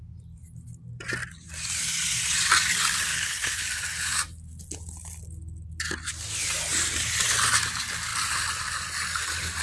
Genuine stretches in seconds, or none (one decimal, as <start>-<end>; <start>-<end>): 0.0-3.1; 3.7-9.6